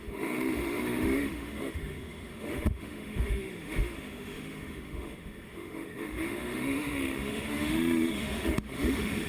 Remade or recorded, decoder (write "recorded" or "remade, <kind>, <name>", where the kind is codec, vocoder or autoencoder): remade, autoencoder, DAC-VAE